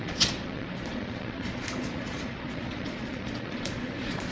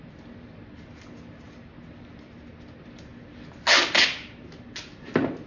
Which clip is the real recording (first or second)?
second